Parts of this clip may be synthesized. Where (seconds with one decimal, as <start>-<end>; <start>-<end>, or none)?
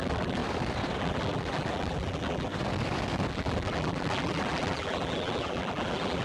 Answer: 0.0-0.4; 1.0-2.5; 3.3-6.2